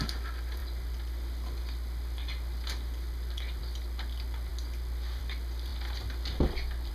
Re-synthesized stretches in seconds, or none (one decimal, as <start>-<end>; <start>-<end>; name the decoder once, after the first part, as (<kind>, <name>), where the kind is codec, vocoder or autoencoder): none